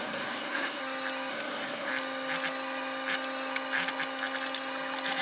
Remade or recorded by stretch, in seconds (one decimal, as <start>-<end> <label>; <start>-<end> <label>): 0.0-0.8 remade; 0.8-1.3 recorded; 1.3-1.9 remade; 1.9-5.2 recorded